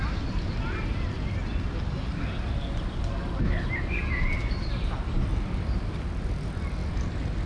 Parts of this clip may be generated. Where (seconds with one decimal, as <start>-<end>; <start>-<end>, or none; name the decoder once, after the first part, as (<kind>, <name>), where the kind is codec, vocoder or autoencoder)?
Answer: none

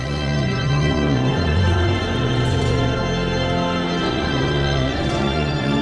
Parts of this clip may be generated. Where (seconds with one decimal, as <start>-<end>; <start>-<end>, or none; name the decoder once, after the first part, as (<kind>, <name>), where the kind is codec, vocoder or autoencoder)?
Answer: 0.0-3.0 (vocoder, Vocos); 4.1-5.8

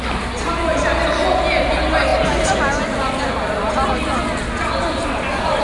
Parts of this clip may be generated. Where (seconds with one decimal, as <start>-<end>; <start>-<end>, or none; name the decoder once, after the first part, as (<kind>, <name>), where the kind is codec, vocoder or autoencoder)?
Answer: none

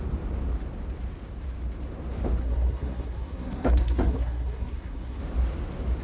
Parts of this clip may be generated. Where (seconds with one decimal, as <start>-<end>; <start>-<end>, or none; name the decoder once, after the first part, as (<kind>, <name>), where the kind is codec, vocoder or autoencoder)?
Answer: 2.4-5.2 (codec, SNAC)

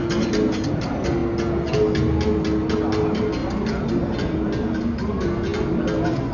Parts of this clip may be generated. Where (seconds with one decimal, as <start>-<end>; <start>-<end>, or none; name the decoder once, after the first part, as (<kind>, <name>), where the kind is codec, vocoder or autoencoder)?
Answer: none

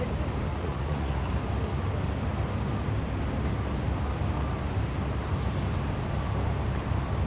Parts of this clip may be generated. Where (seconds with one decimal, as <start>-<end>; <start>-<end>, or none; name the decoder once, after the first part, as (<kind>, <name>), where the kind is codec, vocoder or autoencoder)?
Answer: 0.5-1.3 (vocoder, Vocos)

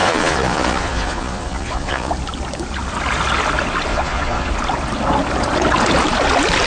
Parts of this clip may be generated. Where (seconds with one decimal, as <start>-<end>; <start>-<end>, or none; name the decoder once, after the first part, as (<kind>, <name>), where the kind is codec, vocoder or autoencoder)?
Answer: 0.0-2.1 (vocoder, Vocos); 3.9-4.5

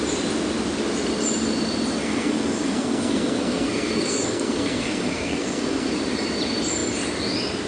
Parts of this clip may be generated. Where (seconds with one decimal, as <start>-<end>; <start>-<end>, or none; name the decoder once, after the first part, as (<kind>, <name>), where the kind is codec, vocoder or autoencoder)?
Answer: 2.0-5.9 (codec, SNAC)